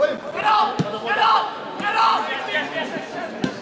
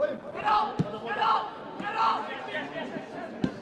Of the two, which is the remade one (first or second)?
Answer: second